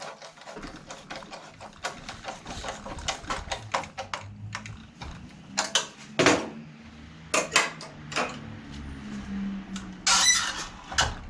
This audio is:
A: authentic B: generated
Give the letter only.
A